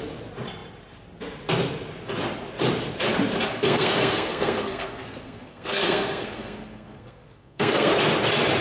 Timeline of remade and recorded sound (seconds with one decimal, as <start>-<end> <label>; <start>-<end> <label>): 0.0-3.5 recorded; 3.5-7.9 remade; 7.9-8.6 recorded